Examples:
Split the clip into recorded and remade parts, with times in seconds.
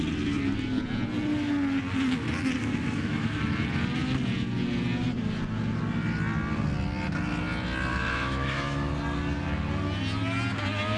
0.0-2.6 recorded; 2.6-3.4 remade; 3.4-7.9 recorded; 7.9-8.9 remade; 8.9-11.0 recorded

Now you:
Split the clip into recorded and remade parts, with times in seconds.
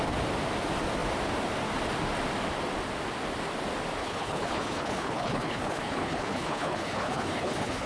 0.0-4.0 recorded; 4.0-7.9 remade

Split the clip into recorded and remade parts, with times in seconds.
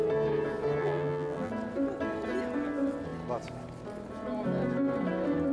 0.0-0.8 recorded; 0.8-1.5 remade; 1.5-5.5 recorded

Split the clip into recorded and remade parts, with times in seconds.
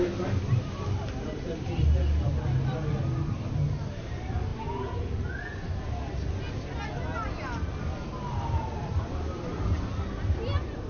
0.0-10.9 recorded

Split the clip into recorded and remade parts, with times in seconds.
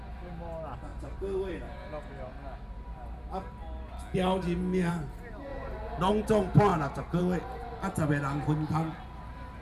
0.0-6.7 recorded; 6.7-7.2 remade; 7.2-9.6 recorded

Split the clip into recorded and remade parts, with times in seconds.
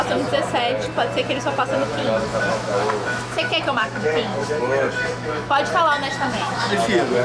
0.0-1.8 recorded; 1.8-5.5 remade; 5.5-6.1 recorded; 6.1-6.7 remade; 6.7-7.2 recorded